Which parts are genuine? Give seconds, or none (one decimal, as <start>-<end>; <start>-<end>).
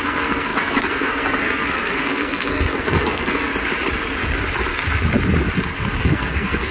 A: 3.5-6.0